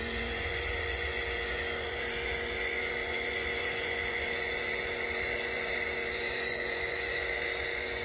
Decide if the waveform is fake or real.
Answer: fake